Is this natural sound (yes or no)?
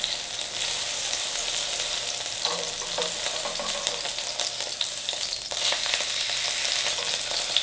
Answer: yes